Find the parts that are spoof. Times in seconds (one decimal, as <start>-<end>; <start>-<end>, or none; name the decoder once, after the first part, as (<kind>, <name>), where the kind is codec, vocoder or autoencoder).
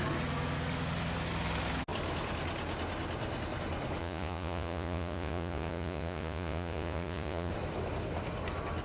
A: 4.0-7.5 (vocoder, Vocos)